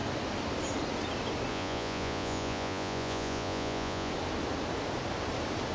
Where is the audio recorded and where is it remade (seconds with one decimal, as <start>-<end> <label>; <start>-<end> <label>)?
0.0-1.5 recorded; 1.5-4.1 remade; 4.1-5.7 recorded